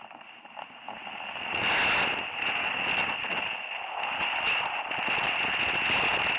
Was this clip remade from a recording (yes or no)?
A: no